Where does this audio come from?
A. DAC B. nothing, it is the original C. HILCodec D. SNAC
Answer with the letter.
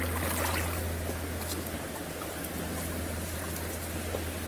B